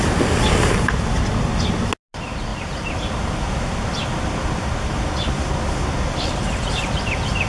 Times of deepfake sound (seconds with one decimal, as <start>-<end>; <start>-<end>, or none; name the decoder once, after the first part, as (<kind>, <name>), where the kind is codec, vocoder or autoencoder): 2.5-3.2 (vocoder, BigVGAN v2)